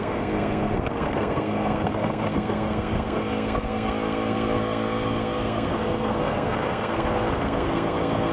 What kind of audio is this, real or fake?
fake